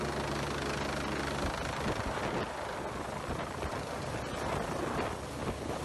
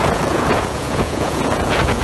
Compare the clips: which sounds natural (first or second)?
first